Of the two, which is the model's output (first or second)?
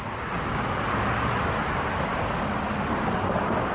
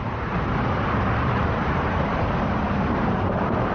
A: second